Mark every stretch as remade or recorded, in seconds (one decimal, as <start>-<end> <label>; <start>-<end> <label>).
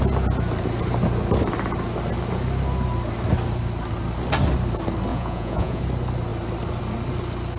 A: 0.0-5.1 recorded; 5.1-5.8 remade; 5.8-7.6 recorded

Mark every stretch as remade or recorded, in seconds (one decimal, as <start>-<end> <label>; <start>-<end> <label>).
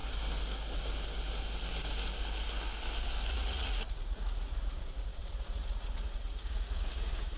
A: 0.0-3.3 recorded; 3.3-7.4 remade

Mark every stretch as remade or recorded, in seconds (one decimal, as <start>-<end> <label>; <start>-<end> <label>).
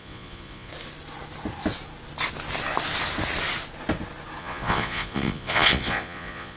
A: 0.0-0.7 remade; 0.7-4.4 recorded; 4.4-6.6 remade